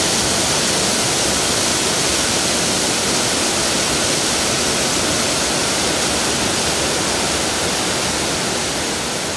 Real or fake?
real